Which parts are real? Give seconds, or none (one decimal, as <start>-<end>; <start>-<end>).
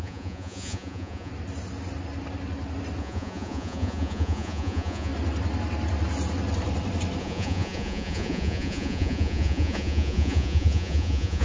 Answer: 1.3-3.0; 5.1-7.2